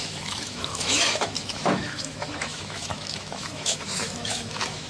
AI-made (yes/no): yes